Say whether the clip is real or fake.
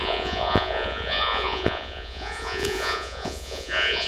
fake